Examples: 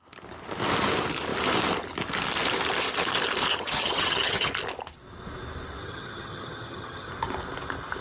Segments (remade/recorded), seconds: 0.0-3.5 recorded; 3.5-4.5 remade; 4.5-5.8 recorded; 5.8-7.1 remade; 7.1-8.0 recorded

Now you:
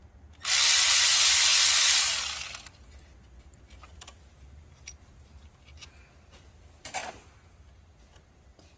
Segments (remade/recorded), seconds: 0.0-0.8 recorded; 0.8-1.5 remade; 1.5-3.9 recorded; 3.9-7.0 remade; 7.0-8.8 recorded

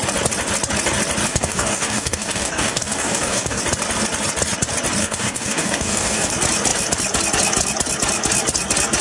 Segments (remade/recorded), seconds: 0.0-1.3 recorded; 1.3-3.6 remade; 3.6-5.0 recorded; 5.0-6.3 remade; 6.3-9.0 recorded

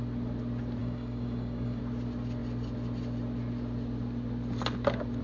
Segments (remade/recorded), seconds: 0.0-0.8 recorded; 0.8-1.8 remade; 1.8-5.2 recorded

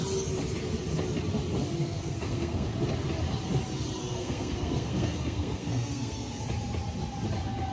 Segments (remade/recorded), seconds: 0.0-1.8 recorded; 1.8-2.7 remade; 2.7-4.0 recorded; 4.0-6.4 remade; 6.4-7.7 recorded